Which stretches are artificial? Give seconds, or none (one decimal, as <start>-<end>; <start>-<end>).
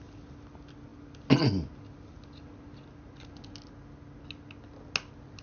none